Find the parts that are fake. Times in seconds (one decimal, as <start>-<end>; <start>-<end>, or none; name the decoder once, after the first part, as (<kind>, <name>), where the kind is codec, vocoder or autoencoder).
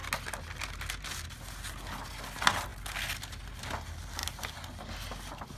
none